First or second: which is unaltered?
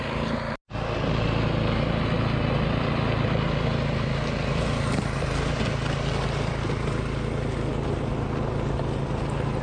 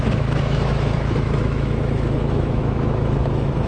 first